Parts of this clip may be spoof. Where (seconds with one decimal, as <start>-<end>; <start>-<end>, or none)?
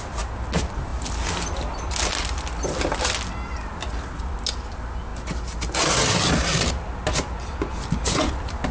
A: none